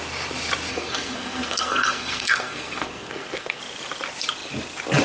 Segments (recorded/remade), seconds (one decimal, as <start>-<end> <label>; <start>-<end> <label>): 0.0-0.7 recorded; 0.7-3.6 remade; 3.6-5.0 recorded